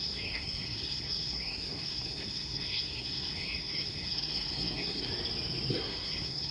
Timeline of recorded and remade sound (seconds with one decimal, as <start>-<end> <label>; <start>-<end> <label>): 0.0-5.1 remade; 5.1-5.7 recorded; 5.7-6.5 remade